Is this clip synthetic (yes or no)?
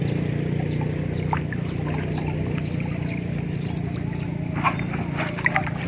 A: no